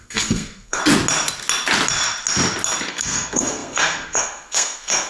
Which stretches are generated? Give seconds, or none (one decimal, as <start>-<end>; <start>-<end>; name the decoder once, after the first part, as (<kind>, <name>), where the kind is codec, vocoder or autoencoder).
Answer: 0.0-0.8 (codec, SNAC); 2.9-5.1